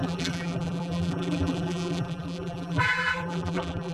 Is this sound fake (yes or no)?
yes